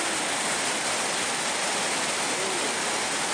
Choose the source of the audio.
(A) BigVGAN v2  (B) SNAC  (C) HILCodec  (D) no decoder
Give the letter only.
D